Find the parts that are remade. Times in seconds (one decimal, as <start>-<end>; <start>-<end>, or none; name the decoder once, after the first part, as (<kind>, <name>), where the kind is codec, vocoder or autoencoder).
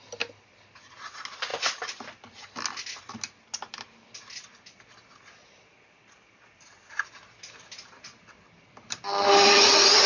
none